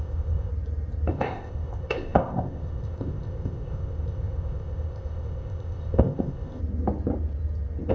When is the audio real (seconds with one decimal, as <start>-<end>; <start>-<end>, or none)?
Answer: 0.5-1.1; 6.6-7.9